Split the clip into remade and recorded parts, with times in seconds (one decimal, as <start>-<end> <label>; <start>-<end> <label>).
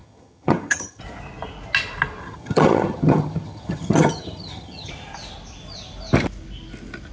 0.0-1.0 remade; 1.0-2.2 recorded; 2.2-4.9 remade; 4.9-7.1 recorded